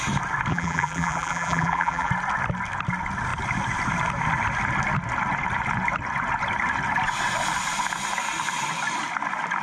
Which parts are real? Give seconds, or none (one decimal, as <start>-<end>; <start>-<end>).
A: 0.0-0.5; 2.1-9.6